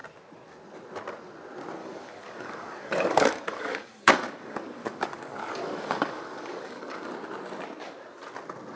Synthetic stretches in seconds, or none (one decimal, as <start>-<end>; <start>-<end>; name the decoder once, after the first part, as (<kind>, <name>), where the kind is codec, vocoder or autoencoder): 1.8-7.1 (codec, DAC)